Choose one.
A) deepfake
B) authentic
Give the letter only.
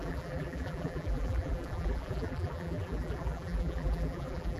A